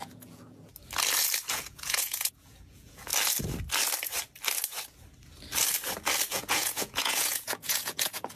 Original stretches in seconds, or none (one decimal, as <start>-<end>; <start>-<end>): 0.7-1.5; 3.1-6.3